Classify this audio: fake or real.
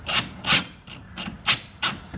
real